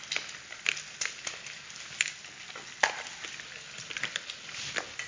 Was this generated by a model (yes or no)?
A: no